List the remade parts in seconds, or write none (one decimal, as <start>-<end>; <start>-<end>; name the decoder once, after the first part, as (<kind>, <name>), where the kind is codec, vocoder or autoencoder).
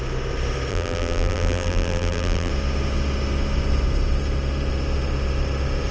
0.7-2.5 (vocoder, BigVGAN v2)